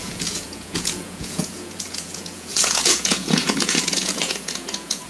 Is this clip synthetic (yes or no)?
yes